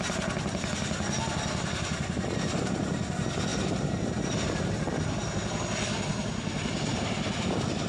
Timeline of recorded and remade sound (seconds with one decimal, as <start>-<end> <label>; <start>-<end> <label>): 0.0-7.9 recorded

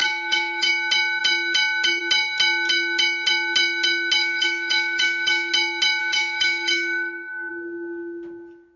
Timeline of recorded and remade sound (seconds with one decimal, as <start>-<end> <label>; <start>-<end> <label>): 0.0-0.7 remade; 0.7-4.2 recorded; 4.2-5.5 remade; 5.5-6.0 recorded; 6.0-7.5 remade; 7.5-8.8 recorded

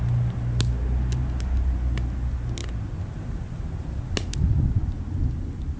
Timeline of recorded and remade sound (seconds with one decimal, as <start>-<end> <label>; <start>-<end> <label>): 0.0-5.8 recorded

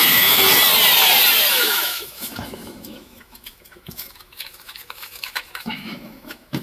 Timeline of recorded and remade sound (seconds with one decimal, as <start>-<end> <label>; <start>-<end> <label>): 0.0-0.4 remade; 0.4-1.5 recorded; 1.5-6.6 remade

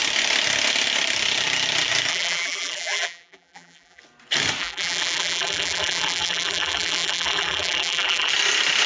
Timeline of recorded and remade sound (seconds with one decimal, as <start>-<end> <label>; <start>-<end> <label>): 0.0-2.1 recorded; 2.1-4.0 remade; 4.0-4.6 recorded; 4.6-8.3 remade; 8.3-8.9 recorded

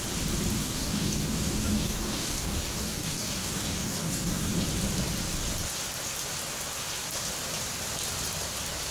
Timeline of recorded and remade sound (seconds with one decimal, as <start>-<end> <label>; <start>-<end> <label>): 0.0-0.6 recorded; 0.6-4.5 remade; 4.5-8.9 recorded

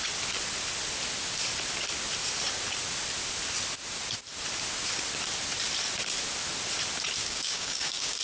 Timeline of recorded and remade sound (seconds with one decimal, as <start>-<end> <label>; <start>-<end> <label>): 0.0-7.2 recorded; 7.2-8.2 remade